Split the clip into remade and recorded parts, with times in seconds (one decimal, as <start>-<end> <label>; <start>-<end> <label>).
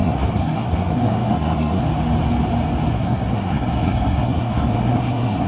0.0-1.8 remade; 1.8-2.9 recorded; 2.9-5.5 remade